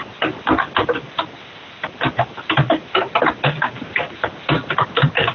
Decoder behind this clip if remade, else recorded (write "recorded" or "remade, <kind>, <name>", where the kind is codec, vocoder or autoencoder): recorded